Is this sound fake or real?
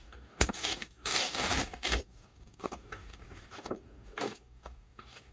fake